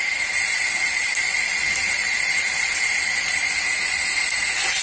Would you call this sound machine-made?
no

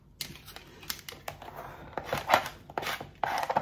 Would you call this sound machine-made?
no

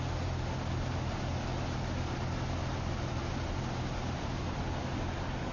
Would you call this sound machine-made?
no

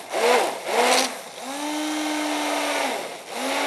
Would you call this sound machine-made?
no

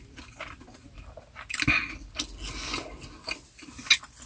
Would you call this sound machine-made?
no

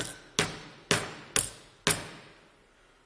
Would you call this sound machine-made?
no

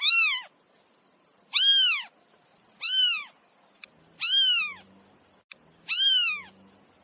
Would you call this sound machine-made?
no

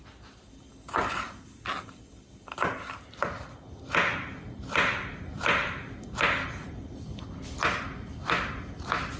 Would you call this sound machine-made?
no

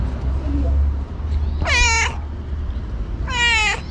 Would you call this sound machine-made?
no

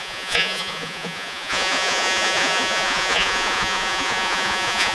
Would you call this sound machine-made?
yes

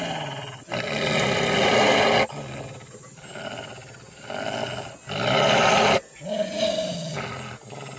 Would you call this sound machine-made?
no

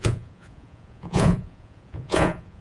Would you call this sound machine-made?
yes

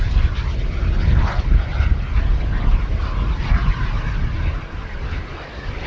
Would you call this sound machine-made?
no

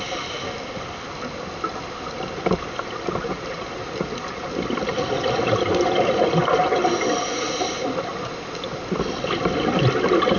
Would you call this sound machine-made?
no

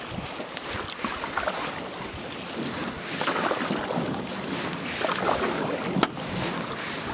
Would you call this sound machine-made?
no